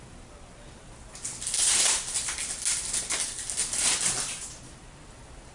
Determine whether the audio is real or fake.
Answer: real